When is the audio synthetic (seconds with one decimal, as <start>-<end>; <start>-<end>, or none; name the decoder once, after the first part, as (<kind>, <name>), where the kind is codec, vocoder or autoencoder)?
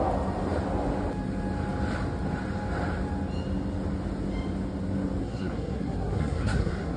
5.2-7.0 (codec, SNAC)